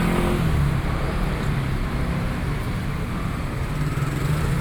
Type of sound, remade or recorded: recorded